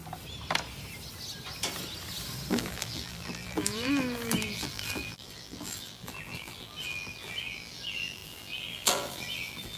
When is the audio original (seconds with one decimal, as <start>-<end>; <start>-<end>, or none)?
0.0-2.5